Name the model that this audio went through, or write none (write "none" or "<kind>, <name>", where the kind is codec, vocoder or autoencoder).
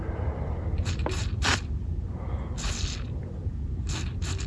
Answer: none